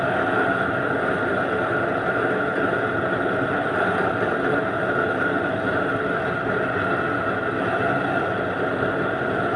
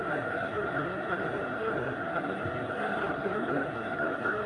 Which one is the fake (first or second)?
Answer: second